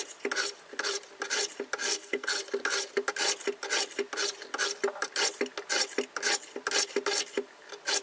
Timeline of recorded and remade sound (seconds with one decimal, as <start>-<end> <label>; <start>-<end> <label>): 0.0-1.8 recorded; 1.8-2.4 remade; 2.4-8.0 recorded